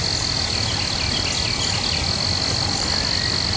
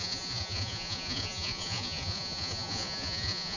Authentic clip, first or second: first